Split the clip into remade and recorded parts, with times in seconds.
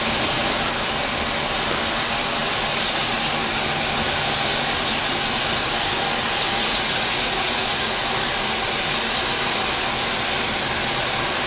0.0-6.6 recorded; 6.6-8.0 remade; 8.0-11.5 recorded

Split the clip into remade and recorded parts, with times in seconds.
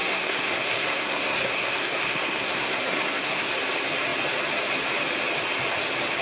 0.0-3.5 remade; 3.5-6.2 recorded